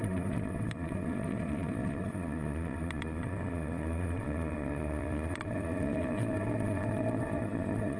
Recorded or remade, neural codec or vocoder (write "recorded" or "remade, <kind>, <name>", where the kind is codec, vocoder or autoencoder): remade, vocoder, Vocos